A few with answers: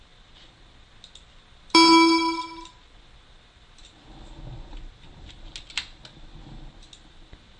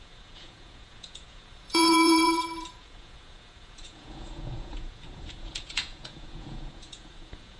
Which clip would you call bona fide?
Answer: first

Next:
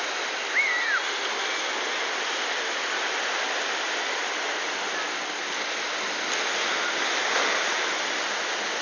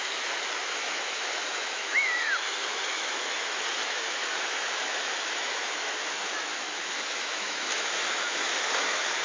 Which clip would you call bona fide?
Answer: first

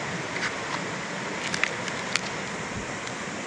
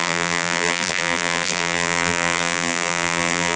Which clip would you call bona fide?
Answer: first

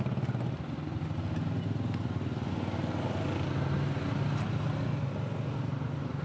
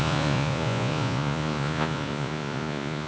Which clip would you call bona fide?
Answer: first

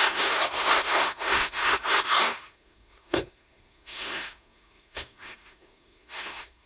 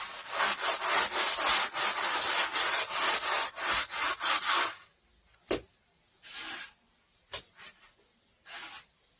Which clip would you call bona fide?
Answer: second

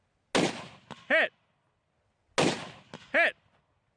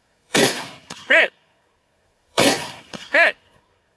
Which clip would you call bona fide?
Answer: first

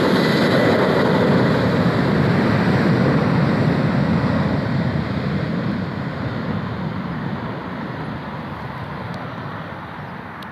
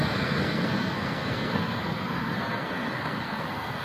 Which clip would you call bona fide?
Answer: first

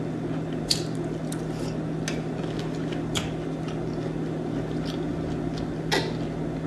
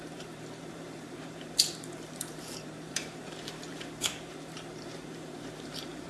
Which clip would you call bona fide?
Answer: first